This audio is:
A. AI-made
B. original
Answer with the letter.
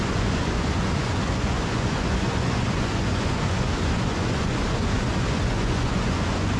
A